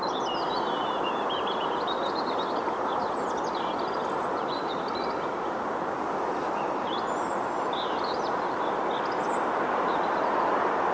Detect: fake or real real